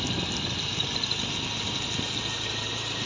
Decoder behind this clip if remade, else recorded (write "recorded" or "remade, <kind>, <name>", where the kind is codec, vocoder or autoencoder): recorded